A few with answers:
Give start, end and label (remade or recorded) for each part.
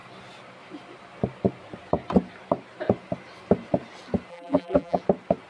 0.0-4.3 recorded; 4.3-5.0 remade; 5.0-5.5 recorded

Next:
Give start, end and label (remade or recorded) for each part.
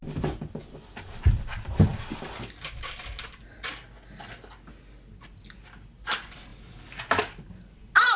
0.0-8.2 recorded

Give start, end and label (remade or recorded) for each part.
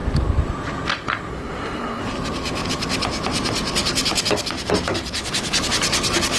0.0-1.3 recorded; 1.3-2.0 remade; 2.0-6.4 recorded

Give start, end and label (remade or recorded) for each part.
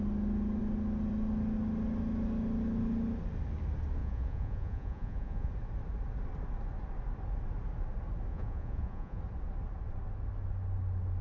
0.0-4.0 recorded; 4.0-5.5 remade; 5.5-8.3 recorded; 8.3-9.2 remade; 9.2-11.2 recorded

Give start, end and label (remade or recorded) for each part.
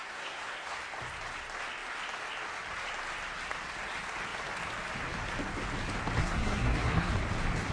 0.0-0.8 remade; 0.8-6.2 recorded; 6.2-7.1 remade; 7.1-7.7 recorded